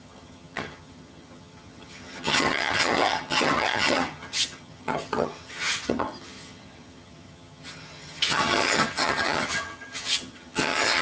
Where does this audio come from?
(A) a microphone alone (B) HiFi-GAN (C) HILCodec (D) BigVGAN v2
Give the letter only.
B